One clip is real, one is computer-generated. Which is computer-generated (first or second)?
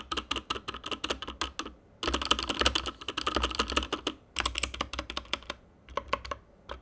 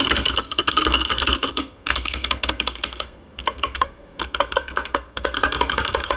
second